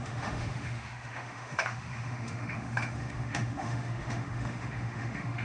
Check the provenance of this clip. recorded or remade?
remade